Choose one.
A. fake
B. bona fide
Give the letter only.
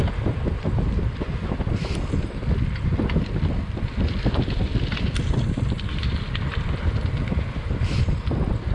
B